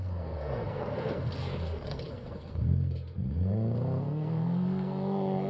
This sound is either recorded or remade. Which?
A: remade